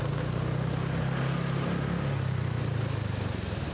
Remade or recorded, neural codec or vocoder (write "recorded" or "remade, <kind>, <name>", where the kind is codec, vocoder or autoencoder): recorded